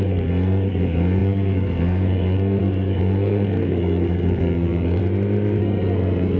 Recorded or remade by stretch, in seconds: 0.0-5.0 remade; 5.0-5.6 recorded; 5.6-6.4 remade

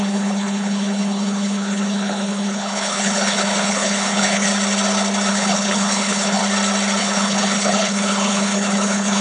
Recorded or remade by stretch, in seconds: 0.0-4.5 remade; 4.5-5.3 recorded; 5.3-6.4 remade; 6.4-7.0 recorded; 7.0-9.2 remade